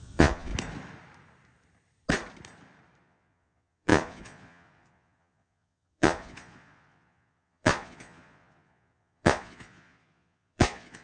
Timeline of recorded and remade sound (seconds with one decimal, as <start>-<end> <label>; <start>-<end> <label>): 0.0-0.5 remade; 0.5-3.0 recorded; 3.0-11.0 remade